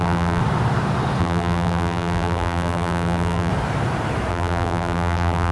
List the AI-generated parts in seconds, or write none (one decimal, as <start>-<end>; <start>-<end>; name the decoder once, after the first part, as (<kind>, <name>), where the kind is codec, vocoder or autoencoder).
0.0-0.4 (vocoder, BigVGAN v2); 1.2-3.5; 4.3-5.5